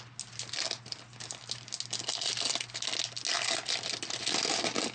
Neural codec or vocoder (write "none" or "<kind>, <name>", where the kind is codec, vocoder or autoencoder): none